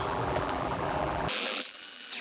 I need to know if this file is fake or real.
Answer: fake